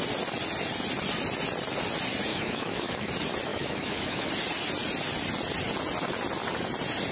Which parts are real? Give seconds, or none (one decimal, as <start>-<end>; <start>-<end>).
0.0-2.3; 3.1-3.5; 4.3-7.1